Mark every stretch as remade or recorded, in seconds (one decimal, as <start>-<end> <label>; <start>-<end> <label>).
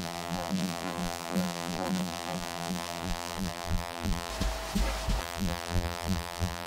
0.0-4.3 remade; 4.3-5.2 recorded; 5.2-6.7 remade